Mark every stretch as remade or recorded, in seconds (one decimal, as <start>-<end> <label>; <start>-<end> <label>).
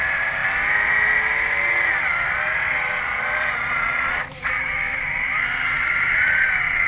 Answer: 0.0-6.9 recorded